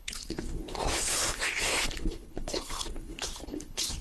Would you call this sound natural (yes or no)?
no